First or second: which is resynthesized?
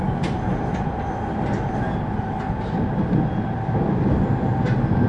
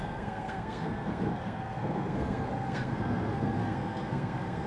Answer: second